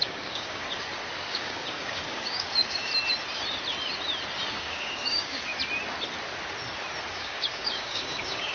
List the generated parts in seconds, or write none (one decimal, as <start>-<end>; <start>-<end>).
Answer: 0.0-0.6; 1.3-2.9; 4.5-5.5; 7.1-8.5

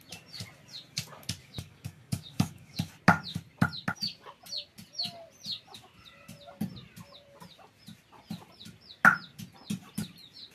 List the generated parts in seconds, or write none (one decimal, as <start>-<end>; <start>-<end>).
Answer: 1.4-2.9